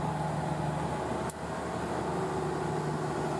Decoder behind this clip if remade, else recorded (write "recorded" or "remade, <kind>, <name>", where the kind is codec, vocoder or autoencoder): recorded